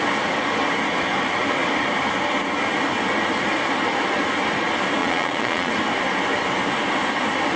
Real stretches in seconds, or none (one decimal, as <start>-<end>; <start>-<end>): 0.0-5.0; 5.7-7.6